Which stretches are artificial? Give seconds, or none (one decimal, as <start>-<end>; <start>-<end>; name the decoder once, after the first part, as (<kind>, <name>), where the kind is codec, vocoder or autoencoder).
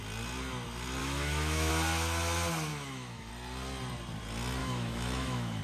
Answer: 1.0-1.7 (autoencoder, DAC-VAE); 2.7-3.3; 4.6-5.6